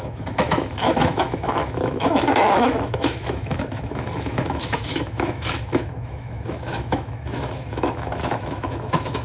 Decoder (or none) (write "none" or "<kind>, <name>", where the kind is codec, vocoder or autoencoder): autoencoder, DAC-VAE